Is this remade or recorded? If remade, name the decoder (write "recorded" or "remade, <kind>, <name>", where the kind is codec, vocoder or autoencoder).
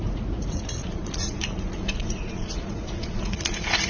remade, vocoder, Vocos